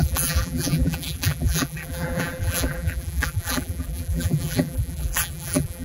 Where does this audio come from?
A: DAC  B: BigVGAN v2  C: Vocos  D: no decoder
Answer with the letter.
B